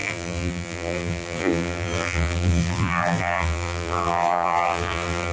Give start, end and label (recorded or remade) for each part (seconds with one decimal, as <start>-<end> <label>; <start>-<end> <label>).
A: 0.0-5.3 remade